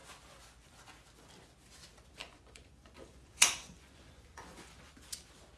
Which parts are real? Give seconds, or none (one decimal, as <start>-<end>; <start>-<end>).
0.0-2.2; 4.8-5.6